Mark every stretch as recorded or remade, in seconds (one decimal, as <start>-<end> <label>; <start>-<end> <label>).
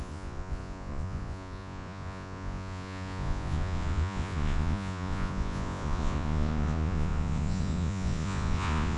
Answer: 0.0-9.0 remade